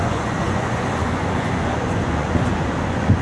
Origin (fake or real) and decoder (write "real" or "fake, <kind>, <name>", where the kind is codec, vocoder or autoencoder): fake, vocoder, Vocos